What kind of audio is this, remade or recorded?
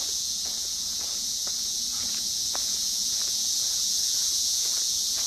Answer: remade